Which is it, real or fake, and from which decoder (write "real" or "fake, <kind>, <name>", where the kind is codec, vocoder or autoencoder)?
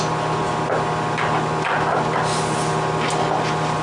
real